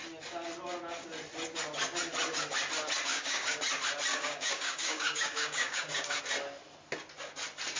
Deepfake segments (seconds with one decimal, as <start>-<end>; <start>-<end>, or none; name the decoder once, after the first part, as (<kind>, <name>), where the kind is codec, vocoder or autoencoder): 3.1-3.6 (codec, DAC); 4.1-6.2